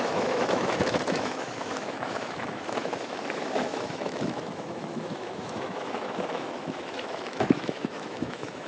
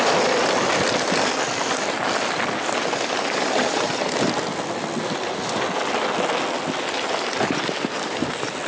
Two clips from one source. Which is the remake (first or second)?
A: first